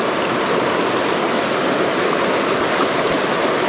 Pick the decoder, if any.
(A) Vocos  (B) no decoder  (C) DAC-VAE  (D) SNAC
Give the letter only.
B